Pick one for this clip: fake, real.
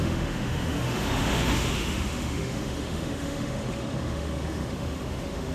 fake